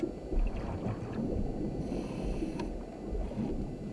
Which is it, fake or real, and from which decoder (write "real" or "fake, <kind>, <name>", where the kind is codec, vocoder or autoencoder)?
real